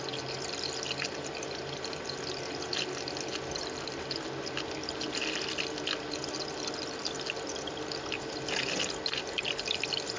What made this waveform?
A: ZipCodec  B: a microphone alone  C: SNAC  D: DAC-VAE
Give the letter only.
B